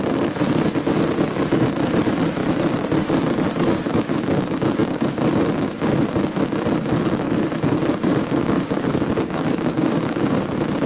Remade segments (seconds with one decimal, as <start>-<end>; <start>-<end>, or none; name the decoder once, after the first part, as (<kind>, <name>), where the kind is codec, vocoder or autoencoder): 8.1-9.1 (codec, DAC); 9.8-10.5